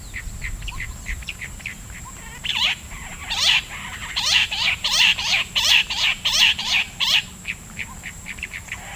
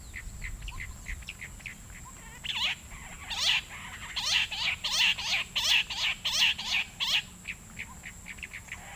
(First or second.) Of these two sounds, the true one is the second